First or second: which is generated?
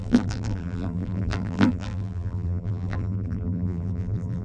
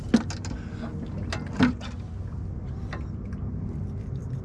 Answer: first